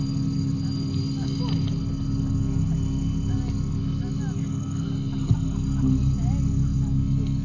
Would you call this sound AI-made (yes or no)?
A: no